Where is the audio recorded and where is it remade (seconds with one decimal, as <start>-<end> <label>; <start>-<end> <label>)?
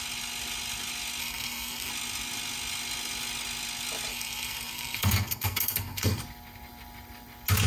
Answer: 0.0-1.2 recorded; 1.2-1.9 remade; 1.9-4.1 recorded; 4.1-6.2 remade; 6.2-7.7 recorded